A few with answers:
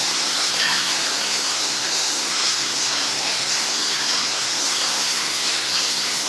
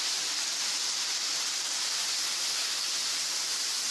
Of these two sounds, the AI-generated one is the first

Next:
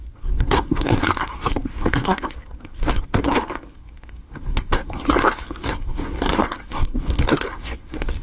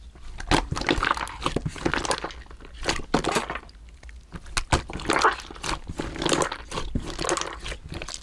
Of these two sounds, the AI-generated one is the first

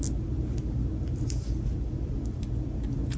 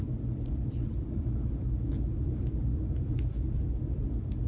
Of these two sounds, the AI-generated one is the second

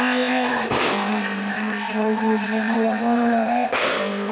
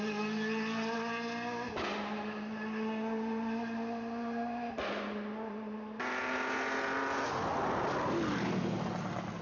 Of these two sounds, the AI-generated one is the first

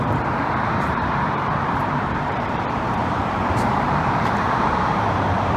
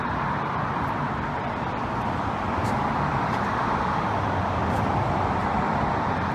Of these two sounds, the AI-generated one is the first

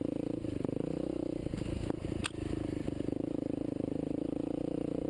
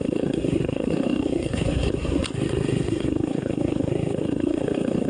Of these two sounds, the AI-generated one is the second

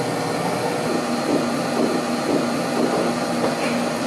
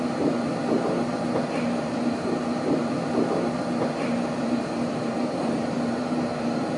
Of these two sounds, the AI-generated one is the second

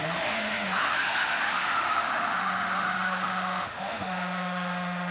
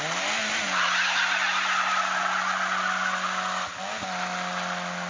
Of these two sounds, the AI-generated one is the first